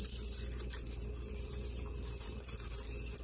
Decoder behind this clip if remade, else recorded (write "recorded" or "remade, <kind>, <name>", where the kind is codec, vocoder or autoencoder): remade, vocoder, BigVGAN v2